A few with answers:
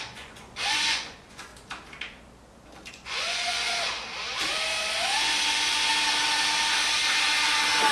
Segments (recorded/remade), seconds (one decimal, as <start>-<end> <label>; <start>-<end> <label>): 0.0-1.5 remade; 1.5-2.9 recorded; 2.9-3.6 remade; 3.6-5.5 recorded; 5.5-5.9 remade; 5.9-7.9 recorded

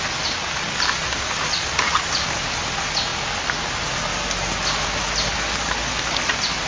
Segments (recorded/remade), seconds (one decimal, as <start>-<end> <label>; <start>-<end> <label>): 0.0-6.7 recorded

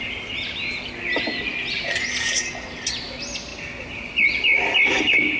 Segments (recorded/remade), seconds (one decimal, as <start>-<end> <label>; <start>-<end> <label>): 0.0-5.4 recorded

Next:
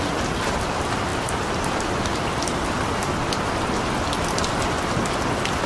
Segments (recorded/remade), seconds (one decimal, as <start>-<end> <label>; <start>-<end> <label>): 0.0-5.7 recorded

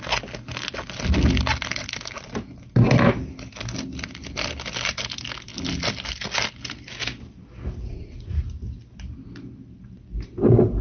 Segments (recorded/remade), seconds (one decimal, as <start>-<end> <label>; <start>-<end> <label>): 0.0-7.9 recorded; 7.9-8.4 remade; 8.4-10.8 recorded

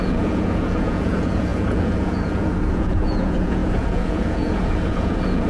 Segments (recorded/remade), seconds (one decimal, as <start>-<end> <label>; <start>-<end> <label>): 0.0-5.5 remade

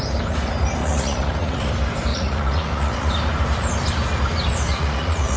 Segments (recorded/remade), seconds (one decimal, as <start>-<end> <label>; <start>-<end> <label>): 0.0-0.8 recorded; 0.8-1.7 remade; 1.7-2.1 recorded; 2.1-3.1 remade; 3.1-4.7 recorded; 4.7-5.4 remade